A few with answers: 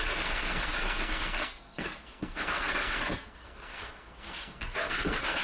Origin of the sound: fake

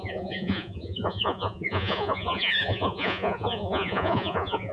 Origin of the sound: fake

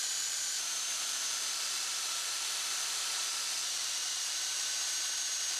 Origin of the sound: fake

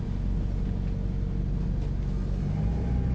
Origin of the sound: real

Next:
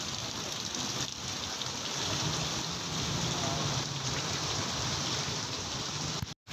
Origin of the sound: real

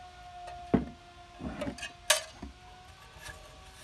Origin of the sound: real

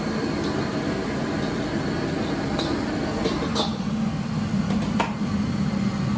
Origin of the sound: real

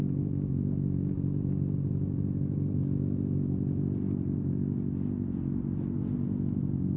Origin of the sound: real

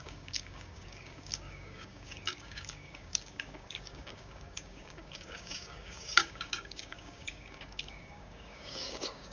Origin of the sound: fake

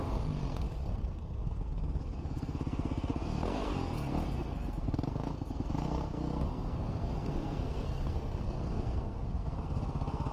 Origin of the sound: fake